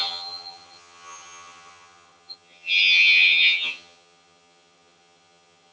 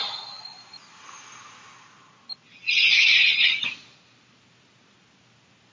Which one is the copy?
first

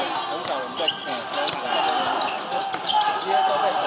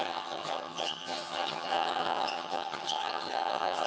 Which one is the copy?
second